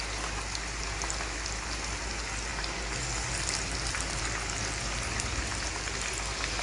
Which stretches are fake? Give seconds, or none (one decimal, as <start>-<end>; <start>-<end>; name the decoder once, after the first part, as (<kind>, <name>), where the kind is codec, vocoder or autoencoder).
none